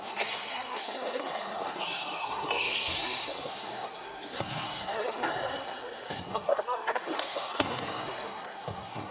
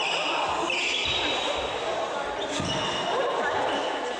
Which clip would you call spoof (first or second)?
first